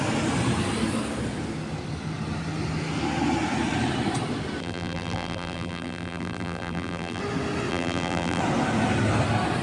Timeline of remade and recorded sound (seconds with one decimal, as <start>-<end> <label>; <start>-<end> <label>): 0.0-4.6 recorded; 4.6-7.2 remade; 7.2-7.7 recorded; 7.7-8.4 remade; 8.4-9.6 recorded